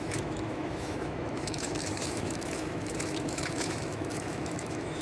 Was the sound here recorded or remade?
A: remade